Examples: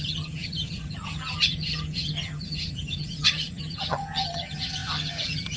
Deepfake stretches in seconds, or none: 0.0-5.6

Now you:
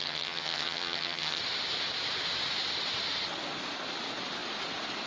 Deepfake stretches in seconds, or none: 0.0-1.4

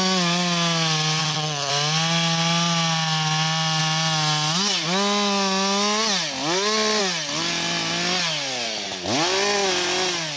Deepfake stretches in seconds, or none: 1.2-1.7

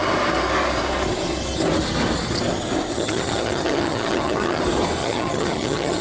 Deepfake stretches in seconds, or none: 2.9-4.6; 5.0-6.0